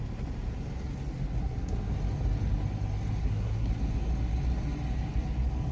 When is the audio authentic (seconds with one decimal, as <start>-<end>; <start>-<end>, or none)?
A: 0.0-1.4; 1.9-3.2; 3.7-5.7